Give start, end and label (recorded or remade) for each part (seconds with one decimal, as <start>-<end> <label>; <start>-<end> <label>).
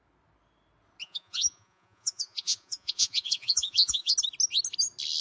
0.0-1.0 recorded; 1.0-4.1 remade; 4.1-5.2 recorded